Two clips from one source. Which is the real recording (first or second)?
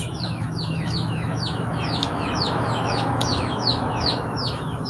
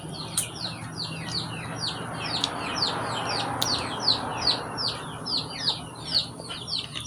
second